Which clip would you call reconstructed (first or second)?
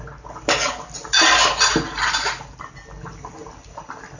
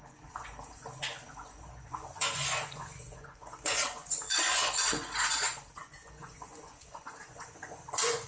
second